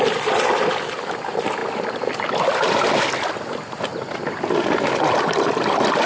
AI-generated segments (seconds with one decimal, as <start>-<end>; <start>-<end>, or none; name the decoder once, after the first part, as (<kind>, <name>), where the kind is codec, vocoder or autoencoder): none